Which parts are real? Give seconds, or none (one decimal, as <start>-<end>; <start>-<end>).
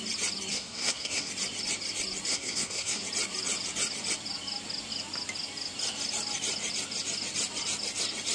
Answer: 0.0-0.5; 1.3-2.3; 3.0-8.3